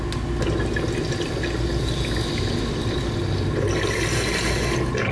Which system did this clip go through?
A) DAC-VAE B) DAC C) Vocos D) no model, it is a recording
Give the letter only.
D